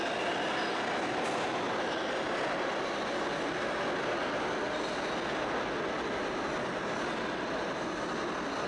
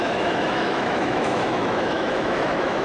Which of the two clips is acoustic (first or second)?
first